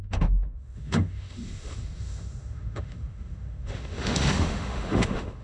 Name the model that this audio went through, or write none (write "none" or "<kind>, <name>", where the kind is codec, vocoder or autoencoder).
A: autoencoder, DAC-VAE